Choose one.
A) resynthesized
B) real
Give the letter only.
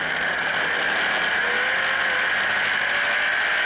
B